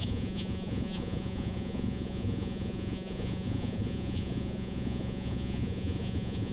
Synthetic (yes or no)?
yes